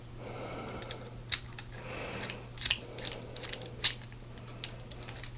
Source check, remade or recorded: recorded